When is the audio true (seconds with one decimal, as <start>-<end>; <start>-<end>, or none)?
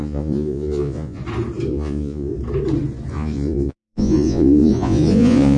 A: 1.2-1.7; 2.3-3.1